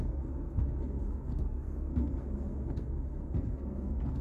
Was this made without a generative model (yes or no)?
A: no